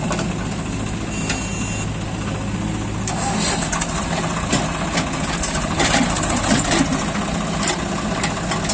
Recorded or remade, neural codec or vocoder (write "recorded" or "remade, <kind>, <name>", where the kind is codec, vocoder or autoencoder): recorded